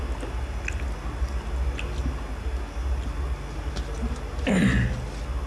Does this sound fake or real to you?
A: real